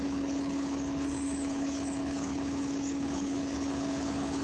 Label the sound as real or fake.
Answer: fake